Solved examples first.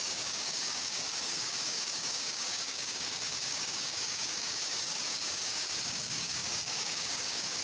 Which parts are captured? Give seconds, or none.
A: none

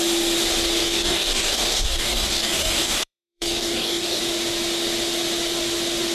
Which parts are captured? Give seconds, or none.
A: 0.0-0.8; 4.2-6.1

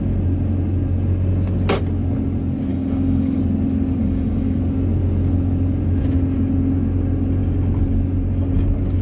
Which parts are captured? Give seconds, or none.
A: 0.0-2.7; 3.4-4.0; 4.6-9.0

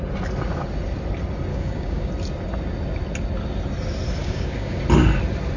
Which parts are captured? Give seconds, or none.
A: 0.0-1.5; 2.1-4.2; 4.8-5.6

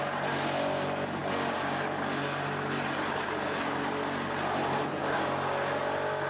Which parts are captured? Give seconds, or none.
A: 0.0-6.3

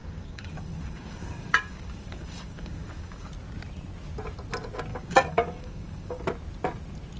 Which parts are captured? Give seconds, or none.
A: 3.3-4.9; 6.2-7.2

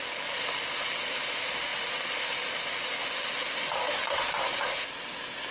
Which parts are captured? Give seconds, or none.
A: 0.0-5.5

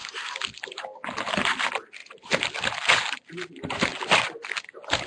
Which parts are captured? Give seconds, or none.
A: 0.0-5.1